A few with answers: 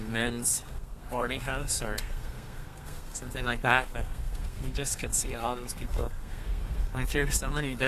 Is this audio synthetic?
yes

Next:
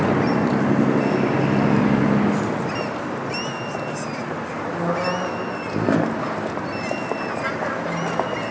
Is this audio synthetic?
no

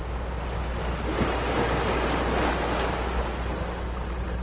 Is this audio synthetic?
no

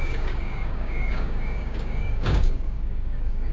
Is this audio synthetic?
yes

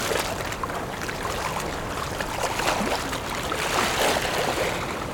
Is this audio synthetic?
no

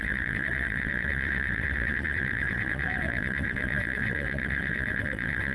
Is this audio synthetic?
yes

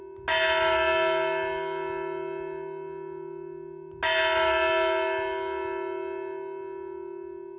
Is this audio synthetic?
no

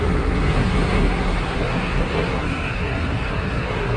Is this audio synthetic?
yes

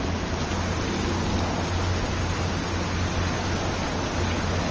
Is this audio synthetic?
no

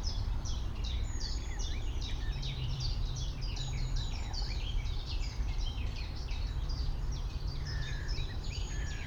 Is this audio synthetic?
yes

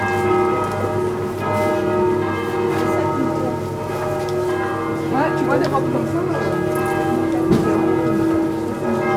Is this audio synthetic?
no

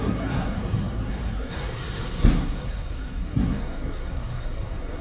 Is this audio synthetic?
yes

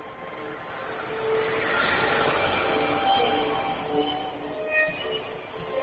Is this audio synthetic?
no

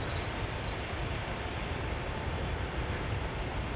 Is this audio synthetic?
yes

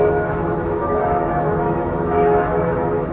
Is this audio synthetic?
yes